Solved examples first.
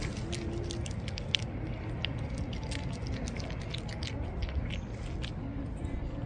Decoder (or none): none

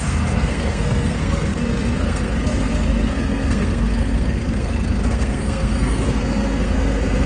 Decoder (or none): codec, SNAC